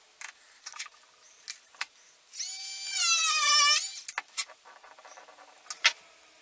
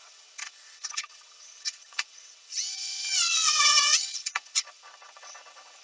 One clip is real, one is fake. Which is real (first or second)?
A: first